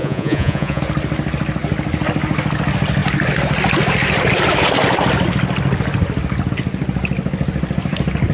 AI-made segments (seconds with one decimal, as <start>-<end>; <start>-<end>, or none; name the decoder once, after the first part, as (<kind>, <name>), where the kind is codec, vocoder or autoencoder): 0.0-0.8 (vocoder, Vocos)